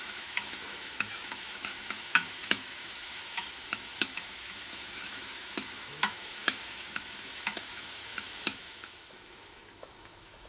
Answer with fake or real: fake